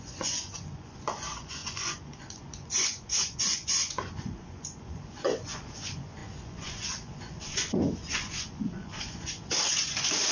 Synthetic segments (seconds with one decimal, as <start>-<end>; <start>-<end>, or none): 0.0-10.3